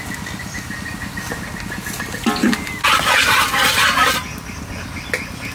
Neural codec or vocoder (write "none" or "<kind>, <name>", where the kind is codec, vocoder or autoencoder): none